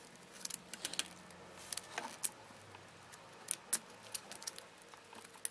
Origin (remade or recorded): recorded